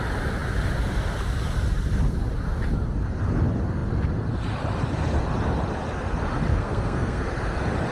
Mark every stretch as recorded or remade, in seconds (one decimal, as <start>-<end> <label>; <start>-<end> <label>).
0.0-6.5 recorded; 6.5-7.2 remade; 7.2-7.9 recorded

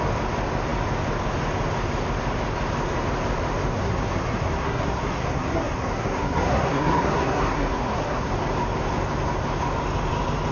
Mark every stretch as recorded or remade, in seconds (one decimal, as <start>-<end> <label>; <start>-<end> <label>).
0.0-3.7 recorded; 3.7-8.3 remade; 8.3-10.5 recorded

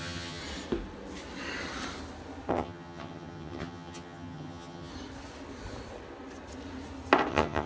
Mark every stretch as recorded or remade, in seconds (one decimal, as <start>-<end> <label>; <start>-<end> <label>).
0.0-0.4 remade; 0.4-2.5 recorded; 2.5-4.9 remade; 4.9-7.3 recorded; 7.3-7.7 remade

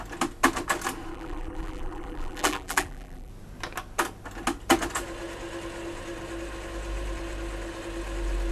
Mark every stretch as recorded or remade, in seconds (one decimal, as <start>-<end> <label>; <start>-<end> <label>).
0.0-1.1 recorded; 1.1-3.3 remade; 3.3-8.5 recorded

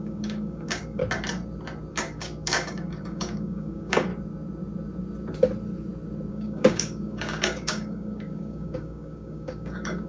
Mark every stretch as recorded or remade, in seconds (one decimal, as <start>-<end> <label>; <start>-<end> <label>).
0.0-1.0 remade; 1.0-1.9 recorded; 1.9-4.1 remade; 4.1-6.3 recorded; 6.3-10.1 remade